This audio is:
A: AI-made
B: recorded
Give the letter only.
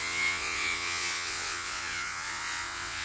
A